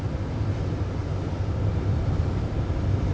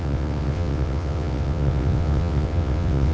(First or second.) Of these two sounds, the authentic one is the first